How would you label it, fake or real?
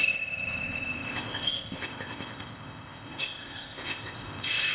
fake